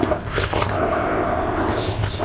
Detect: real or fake fake